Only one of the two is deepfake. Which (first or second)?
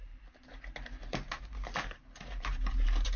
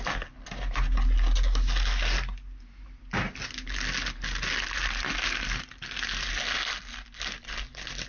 first